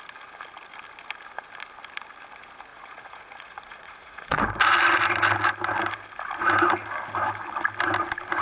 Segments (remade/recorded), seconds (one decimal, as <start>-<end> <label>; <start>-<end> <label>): 0.0-2.7 recorded; 2.7-4.4 remade; 4.4-8.4 recorded